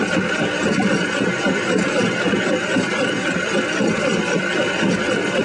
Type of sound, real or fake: real